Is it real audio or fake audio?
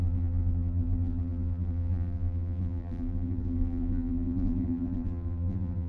fake